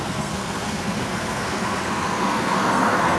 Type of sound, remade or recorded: remade